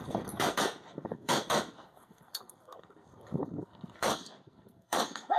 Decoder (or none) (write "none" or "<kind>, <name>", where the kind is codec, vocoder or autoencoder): codec, SNAC